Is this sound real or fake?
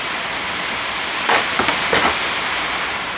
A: real